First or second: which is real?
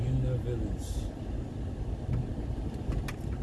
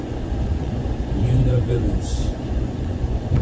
first